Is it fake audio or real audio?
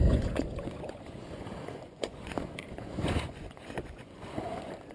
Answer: fake